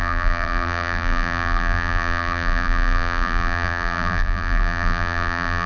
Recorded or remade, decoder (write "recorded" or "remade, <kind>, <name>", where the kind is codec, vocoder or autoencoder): remade, vocoder, BigVGAN v2